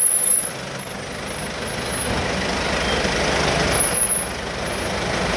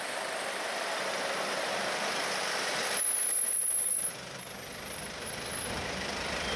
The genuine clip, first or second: first